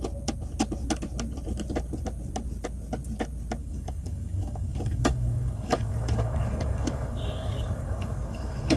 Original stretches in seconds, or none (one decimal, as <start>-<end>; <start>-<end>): 0.0-3.6

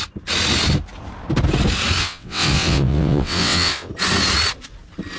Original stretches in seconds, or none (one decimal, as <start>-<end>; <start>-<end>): 0.0-2.0; 3.9-5.2